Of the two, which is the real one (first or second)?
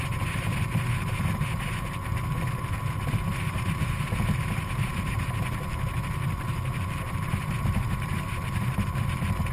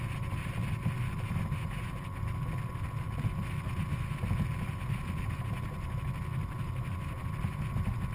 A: second